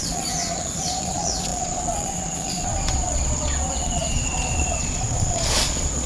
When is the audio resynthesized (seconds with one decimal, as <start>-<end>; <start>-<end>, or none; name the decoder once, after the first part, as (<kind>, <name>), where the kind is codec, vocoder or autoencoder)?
0.0-6.1 (vocoder, Vocos)